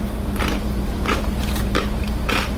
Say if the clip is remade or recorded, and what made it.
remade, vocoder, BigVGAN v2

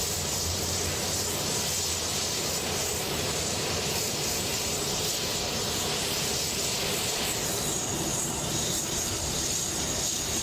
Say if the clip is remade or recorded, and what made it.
remade, vocoder, BigVGAN v2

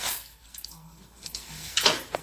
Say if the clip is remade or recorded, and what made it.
remade, codec, SNAC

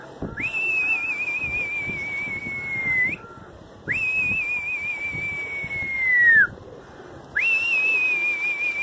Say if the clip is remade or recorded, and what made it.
recorded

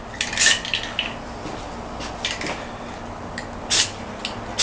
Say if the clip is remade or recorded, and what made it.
recorded